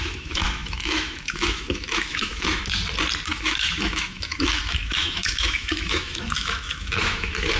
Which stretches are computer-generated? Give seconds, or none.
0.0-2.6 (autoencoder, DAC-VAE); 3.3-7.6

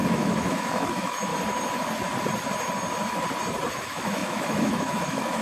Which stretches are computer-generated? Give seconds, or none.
0.0-1.3 (autoencoder, DAC-VAE); 3.7-5.4